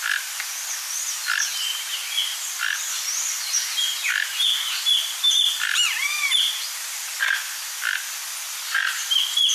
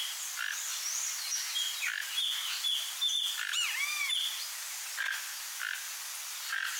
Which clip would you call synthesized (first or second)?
first